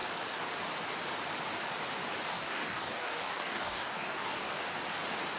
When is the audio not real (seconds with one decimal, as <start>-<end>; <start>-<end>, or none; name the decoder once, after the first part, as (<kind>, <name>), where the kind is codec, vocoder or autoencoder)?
2.3-4.6 (codec, DAC)